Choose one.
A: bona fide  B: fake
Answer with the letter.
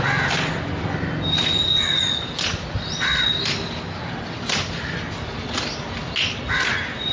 A